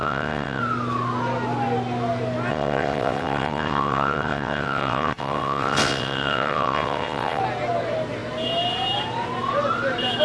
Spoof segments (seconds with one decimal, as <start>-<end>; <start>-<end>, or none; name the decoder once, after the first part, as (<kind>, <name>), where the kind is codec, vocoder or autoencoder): 0.0-0.6 (vocoder, WaveNeXt); 2.5-7.4